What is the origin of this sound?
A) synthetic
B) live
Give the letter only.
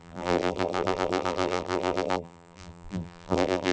A